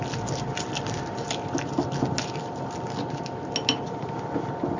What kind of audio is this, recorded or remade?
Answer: recorded